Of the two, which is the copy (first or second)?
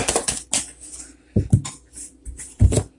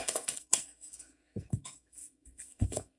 second